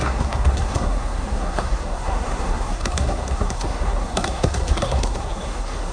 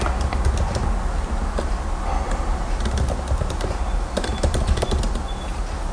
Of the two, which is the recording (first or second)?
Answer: second